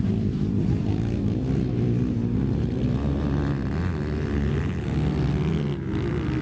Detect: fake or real real